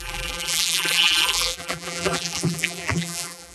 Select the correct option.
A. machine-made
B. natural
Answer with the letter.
A